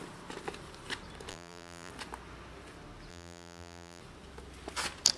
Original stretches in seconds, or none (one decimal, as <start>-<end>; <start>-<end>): 0.0-1.3; 1.9-3.1; 4.0-5.2